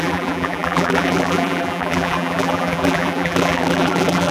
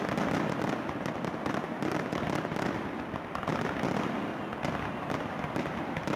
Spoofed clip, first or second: first